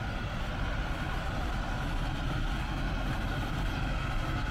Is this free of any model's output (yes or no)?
yes